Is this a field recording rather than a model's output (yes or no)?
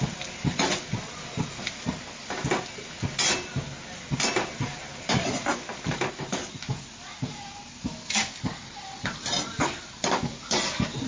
yes